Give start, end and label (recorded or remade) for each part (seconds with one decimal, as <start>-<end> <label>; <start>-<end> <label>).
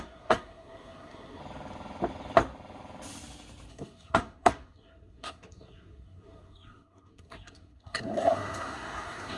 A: 0.0-1.4 remade; 1.4-3.7 recorded; 3.7-9.4 remade